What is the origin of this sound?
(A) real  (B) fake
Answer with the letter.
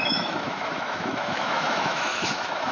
B